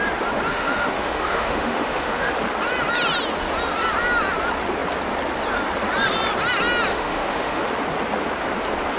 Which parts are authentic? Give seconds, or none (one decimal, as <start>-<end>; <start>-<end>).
0.0-0.5; 2.3-6.9; 7.6-9.0